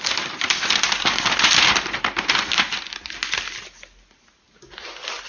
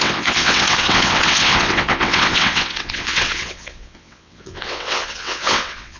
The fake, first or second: second